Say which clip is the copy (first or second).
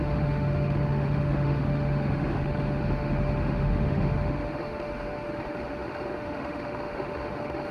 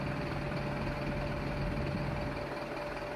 first